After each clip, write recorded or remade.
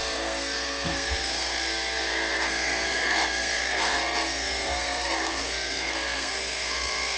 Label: remade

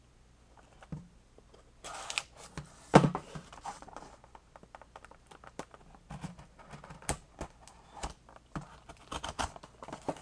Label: recorded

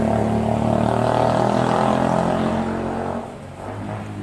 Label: recorded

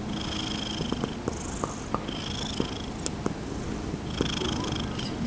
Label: recorded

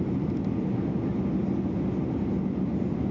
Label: recorded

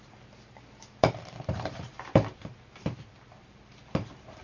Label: remade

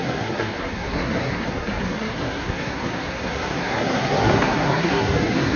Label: remade